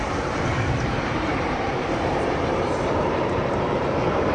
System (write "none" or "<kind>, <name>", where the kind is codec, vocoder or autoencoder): vocoder, BigVGAN v2